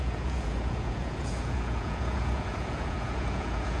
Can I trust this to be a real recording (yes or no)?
no